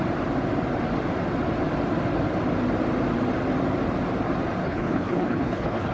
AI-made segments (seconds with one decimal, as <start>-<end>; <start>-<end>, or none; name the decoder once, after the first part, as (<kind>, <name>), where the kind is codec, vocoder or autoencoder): 4.6-5.9 (codec, HILCodec)